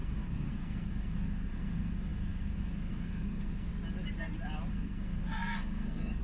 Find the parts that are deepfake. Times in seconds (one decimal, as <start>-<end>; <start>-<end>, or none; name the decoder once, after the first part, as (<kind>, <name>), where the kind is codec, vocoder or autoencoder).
0.0-3.7 (codec, SNAC); 4.7-6.2